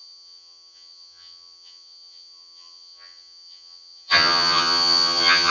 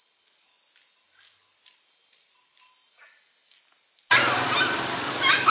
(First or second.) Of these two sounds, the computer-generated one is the first